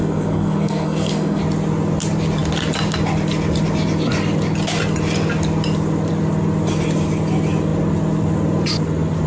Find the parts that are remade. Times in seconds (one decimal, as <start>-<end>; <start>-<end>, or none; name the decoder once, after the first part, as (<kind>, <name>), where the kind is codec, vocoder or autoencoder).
0.0-1.4 (codec, SNAC)